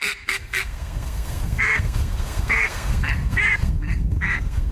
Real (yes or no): no